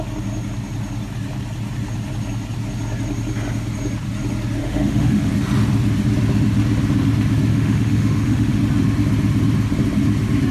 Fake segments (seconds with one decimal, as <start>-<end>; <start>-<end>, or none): 4.6-5.3; 7.5-8.6